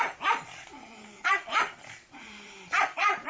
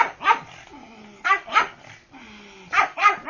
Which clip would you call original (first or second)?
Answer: second